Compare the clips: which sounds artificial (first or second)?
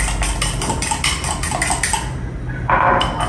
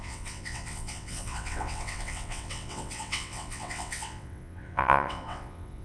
second